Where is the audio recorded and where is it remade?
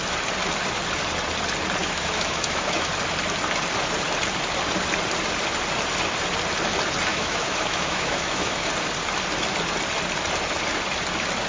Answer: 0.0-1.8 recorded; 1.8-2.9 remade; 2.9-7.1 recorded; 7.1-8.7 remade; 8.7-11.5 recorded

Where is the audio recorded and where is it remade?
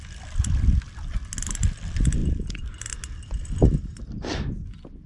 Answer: 0.0-5.1 recorded